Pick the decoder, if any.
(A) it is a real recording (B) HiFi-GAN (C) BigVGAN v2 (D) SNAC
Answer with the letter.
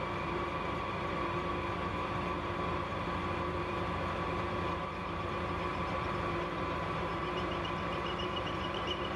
C